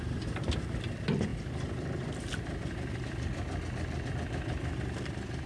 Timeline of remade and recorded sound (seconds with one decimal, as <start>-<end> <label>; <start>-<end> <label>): 0.0-5.5 recorded